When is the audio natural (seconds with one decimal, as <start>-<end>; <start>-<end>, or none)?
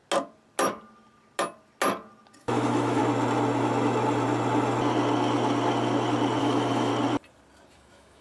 0.0-2.4; 3.0-6.4; 6.9-7.7